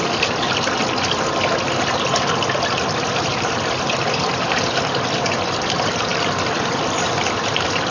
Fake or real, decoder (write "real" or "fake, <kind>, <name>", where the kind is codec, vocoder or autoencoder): real